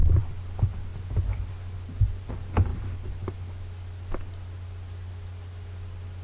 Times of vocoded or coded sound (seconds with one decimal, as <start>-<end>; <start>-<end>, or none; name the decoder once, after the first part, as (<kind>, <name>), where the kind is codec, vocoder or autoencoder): none